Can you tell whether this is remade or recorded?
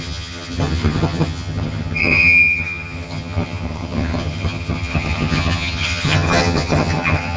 remade